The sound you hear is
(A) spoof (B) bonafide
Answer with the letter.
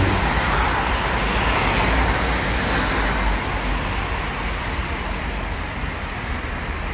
B